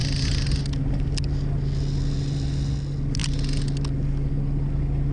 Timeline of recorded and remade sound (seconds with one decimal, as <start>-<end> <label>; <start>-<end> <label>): 0.0-5.1 recorded